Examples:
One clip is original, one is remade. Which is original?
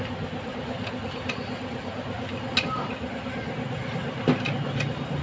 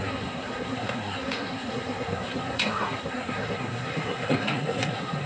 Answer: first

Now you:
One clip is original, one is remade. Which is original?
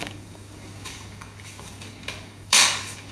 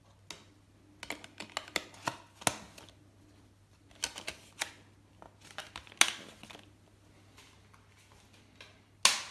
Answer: second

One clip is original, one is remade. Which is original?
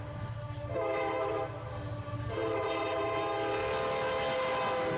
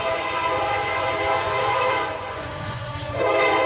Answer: first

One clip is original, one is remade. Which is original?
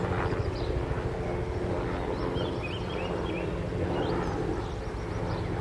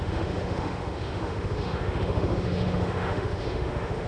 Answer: first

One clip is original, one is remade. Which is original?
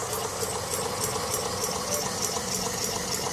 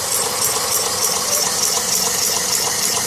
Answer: first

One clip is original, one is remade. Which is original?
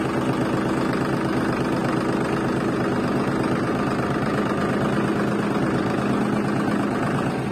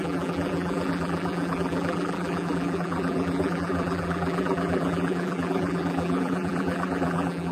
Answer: first